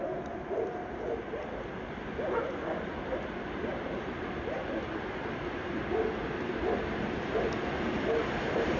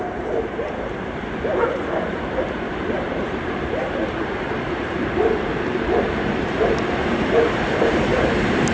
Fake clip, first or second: second